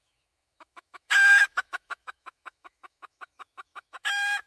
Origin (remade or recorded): remade